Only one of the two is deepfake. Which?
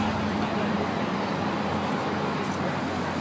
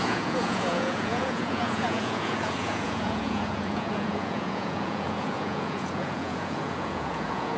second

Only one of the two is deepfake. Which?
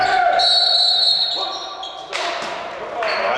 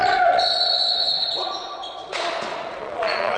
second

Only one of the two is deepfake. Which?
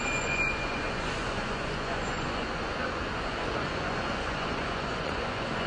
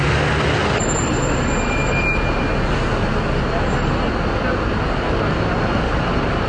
first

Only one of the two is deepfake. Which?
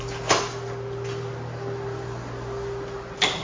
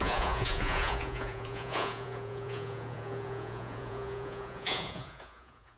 second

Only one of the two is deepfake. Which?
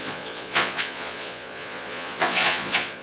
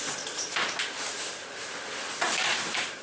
first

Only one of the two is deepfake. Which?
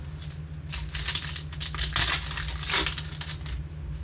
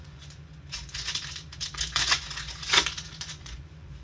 second